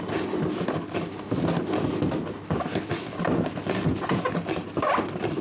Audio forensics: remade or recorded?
recorded